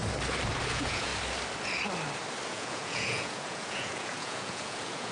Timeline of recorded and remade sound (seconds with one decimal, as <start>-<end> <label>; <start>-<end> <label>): 0.0-0.7 recorded; 0.7-1.1 remade; 1.1-2.5 recorded; 2.5-5.1 remade